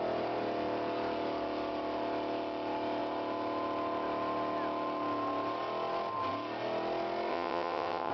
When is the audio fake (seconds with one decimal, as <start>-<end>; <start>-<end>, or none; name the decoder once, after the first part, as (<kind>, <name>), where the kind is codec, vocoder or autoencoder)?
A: 7.3-8.1 (vocoder, WaveNeXt)